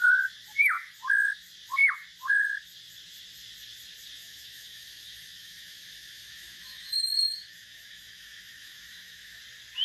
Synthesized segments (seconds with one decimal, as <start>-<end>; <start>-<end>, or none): 4.2-9.4